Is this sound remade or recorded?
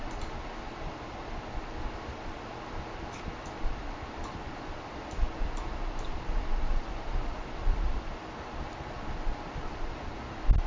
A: remade